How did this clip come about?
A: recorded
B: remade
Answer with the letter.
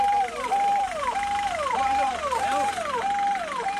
B